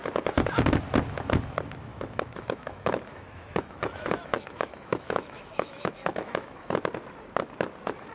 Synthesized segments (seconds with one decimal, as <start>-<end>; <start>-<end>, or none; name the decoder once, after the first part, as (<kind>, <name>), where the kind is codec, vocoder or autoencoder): 0.0-0.6 (autoencoder, DAC-VAE); 1.9-6.8

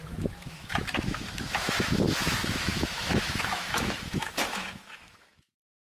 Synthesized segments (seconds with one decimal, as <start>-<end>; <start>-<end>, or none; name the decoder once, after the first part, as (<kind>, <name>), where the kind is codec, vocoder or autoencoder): 0.0-5.8 (autoencoder, DAC-VAE)

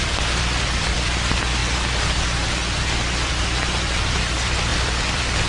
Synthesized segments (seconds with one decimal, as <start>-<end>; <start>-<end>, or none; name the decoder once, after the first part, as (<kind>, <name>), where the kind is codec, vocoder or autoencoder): 0.0-1.6 (vocoder, BigVGAN v2); 3.3-5.5

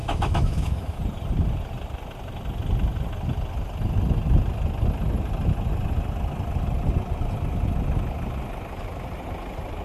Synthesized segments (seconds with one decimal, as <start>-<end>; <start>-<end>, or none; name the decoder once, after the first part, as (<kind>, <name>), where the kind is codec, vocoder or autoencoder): 0.0-1.0 (autoencoder, DAC-VAE)